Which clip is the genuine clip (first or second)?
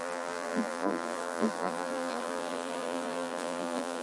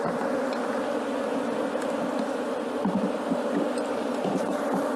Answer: second